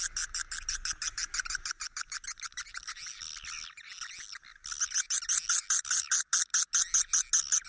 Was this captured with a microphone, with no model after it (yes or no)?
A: yes